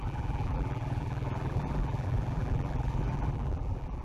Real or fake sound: fake